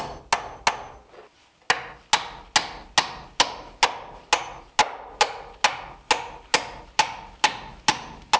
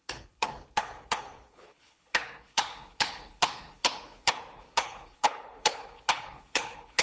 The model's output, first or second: second